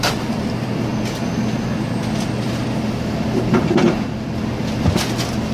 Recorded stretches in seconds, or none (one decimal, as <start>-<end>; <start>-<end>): 0.0-5.5